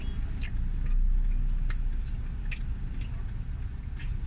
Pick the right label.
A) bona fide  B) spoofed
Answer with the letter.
A